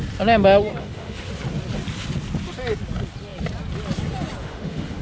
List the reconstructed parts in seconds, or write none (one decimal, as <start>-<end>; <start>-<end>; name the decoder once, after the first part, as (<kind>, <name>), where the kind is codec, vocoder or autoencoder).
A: 0.8-1.3 (autoencoder, DAC-VAE); 4.4-5.0

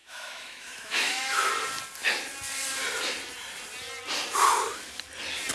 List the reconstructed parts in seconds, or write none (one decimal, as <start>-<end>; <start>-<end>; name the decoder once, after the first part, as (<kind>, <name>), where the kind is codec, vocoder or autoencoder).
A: 0.0-1.5 (autoencoder, DAC-VAE)

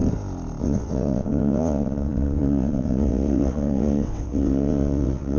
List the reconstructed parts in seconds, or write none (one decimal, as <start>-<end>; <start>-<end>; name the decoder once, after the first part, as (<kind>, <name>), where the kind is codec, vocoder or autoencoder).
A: 0.6-5.4 (vocoder, WaveNeXt)

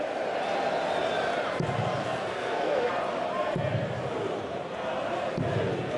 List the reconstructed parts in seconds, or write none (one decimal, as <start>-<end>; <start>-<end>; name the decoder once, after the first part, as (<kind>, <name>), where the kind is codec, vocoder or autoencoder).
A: 2.0-2.9 (codec, SNAC)

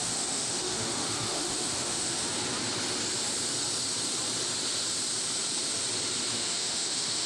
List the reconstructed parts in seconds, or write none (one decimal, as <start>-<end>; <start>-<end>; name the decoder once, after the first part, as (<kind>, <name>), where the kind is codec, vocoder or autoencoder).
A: 0.0-2.2 (autoencoder, DAC-VAE); 6.3-7.3